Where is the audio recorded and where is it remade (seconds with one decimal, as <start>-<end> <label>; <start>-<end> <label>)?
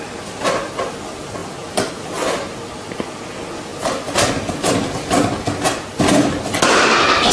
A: 0.0-3.7 recorded; 3.7-4.7 remade; 4.7-7.3 recorded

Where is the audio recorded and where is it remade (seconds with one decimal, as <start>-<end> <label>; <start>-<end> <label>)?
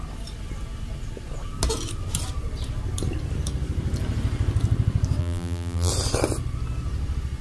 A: 0.0-5.2 recorded; 5.2-5.9 remade; 5.9-7.4 recorded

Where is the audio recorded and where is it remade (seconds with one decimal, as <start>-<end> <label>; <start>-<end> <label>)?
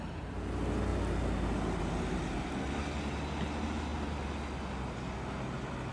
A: 0.0-5.9 recorded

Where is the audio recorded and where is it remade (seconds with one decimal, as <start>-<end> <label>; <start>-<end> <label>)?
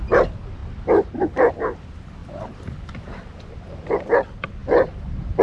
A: 0.0-0.6 recorded; 0.6-1.5 remade; 1.5-2.2 recorded; 2.2-2.9 remade; 2.9-4.6 recorded; 4.6-5.4 remade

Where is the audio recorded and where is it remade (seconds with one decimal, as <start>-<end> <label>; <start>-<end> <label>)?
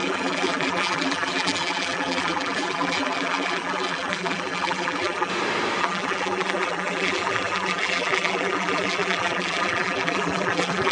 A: 0.0-5.3 remade; 5.3-5.8 recorded; 5.8-10.9 remade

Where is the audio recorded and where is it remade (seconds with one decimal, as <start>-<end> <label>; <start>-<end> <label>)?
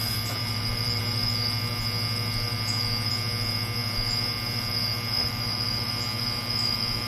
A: 0.0-0.4 recorded; 0.4-1.0 remade; 1.0-5.2 recorded; 5.2-5.9 remade; 5.9-7.1 recorded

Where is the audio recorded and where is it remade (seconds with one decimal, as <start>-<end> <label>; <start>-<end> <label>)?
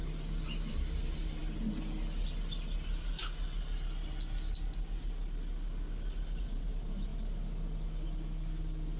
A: 0.0-0.7 recorded; 0.7-1.4 remade; 1.4-6.4 recorded; 6.4-7.1 remade; 7.1-9.0 recorded